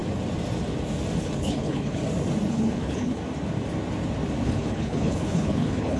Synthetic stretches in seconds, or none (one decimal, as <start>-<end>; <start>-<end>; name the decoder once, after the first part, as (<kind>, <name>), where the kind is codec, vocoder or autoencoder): 1.2-2.0 (codec, HILCodec); 2.5-3.2; 4.4-6.0